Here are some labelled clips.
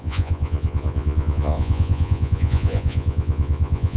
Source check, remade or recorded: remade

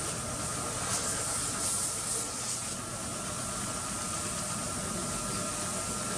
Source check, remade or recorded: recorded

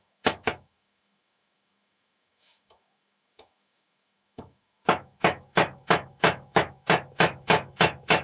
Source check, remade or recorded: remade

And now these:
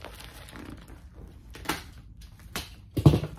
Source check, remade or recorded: remade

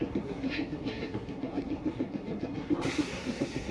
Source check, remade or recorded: remade